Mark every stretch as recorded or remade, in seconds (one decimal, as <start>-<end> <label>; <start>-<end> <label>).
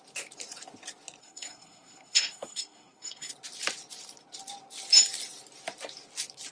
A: 0.0-1.2 recorded; 1.2-3.3 remade; 3.3-6.5 recorded